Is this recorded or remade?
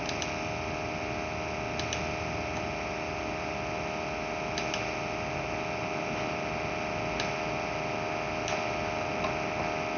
recorded